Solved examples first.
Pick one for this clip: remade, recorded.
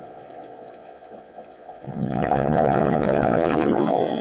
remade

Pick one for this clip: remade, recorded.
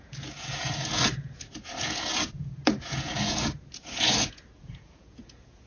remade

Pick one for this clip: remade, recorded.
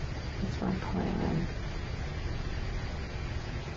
remade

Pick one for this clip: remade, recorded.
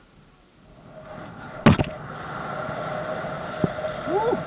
recorded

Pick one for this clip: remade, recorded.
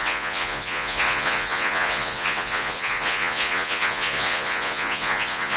remade